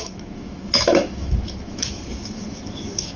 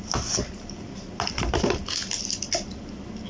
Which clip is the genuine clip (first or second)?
second